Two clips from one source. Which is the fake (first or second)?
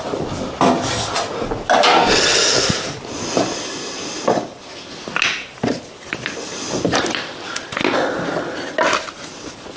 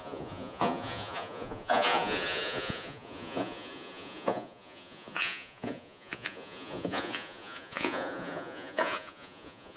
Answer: second